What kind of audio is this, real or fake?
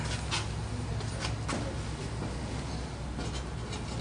real